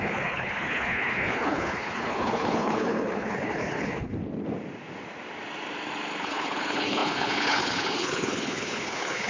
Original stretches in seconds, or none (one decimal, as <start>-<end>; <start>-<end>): 4.1-6.2

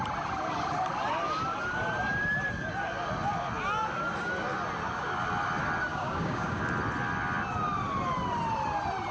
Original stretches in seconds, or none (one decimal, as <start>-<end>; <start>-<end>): 0.0-5.9; 6.6-9.1